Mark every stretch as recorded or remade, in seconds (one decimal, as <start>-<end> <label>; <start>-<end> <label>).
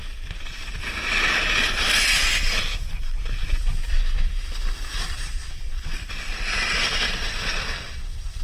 0.0-8.4 recorded